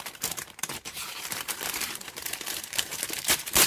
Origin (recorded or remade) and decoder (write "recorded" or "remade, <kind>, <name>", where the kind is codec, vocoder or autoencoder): remade, vocoder, BigVGAN v2